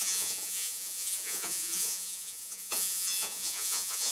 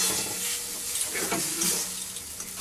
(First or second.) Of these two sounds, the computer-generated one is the first